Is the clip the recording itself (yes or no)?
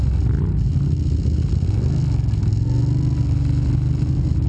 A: yes